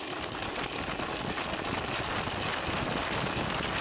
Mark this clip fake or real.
real